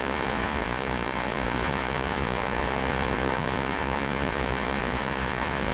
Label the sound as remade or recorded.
remade